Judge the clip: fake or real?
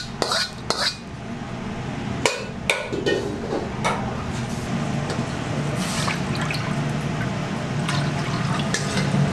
real